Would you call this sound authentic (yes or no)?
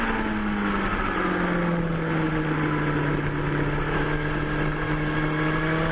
yes